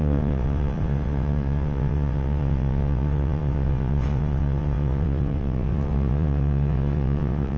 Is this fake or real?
fake